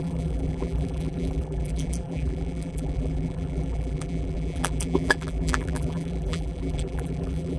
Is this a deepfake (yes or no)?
yes